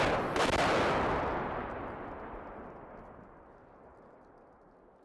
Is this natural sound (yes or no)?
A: yes